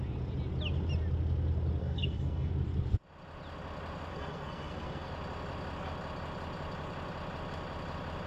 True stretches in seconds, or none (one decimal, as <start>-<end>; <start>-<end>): 0.0-1.8; 2.5-4.1; 5.1-8.3